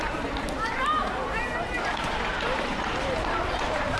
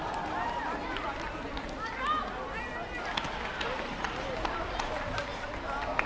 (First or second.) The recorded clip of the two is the second